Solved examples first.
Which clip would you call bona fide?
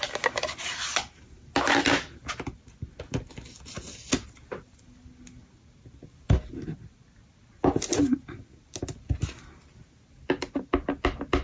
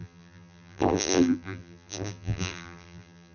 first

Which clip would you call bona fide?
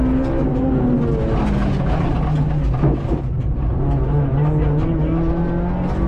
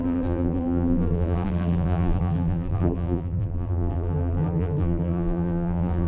first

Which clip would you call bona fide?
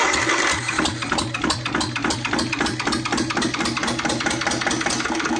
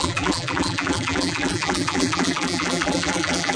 first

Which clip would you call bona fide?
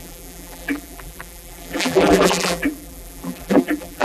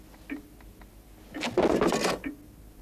second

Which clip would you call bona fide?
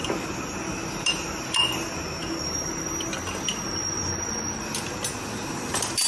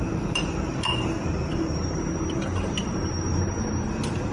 first